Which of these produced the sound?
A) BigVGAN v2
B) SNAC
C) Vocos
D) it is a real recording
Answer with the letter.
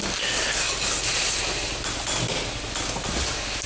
D